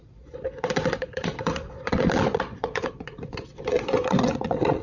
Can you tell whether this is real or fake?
fake